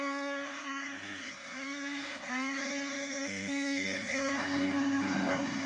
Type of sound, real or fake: fake